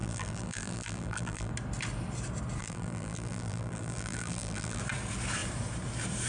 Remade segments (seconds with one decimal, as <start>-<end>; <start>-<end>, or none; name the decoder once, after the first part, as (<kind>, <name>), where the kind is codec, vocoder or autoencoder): 0.0-1.5 (vocoder, BigVGAN v2); 2.6-4.8